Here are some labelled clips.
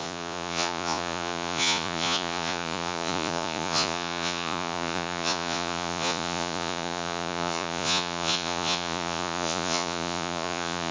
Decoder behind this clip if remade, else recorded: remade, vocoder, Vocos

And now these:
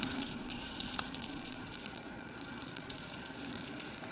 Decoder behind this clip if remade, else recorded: remade, vocoder, Vocos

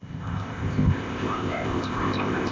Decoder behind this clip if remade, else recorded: remade, codec, ZipCodec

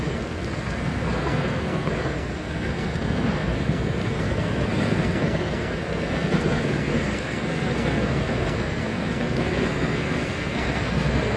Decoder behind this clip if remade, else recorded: remade, codec, SNAC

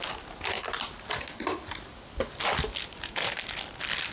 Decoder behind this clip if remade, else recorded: recorded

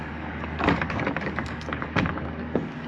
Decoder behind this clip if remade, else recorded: remade, codec, DAC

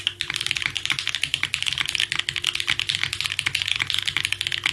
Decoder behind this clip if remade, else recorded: recorded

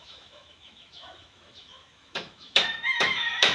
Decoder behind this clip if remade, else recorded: remade, autoencoder, DAC-VAE